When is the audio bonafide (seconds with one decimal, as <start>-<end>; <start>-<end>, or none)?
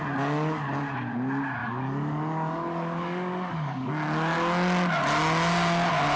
0.0-1.6; 3.9-6.2